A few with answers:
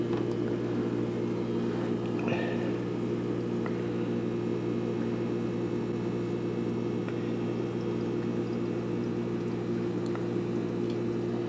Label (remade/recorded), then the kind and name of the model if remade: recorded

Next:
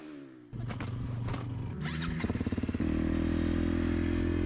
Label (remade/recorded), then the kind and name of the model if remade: recorded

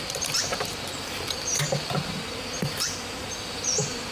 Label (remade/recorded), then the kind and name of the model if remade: remade, vocoder, BigVGAN v2